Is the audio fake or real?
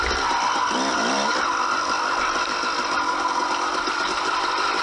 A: fake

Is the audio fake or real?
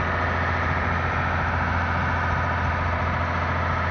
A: real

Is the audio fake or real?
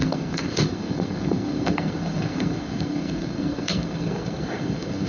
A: fake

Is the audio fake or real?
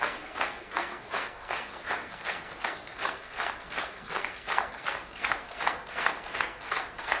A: fake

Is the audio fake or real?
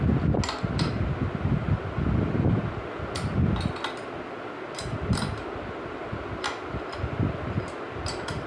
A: real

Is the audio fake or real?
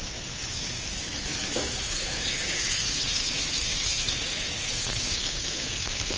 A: fake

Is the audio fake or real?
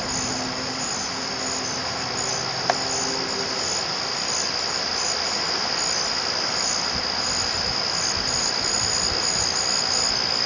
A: real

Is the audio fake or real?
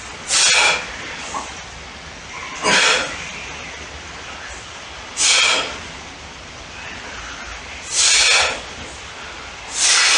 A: real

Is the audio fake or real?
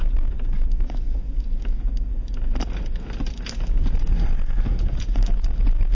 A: real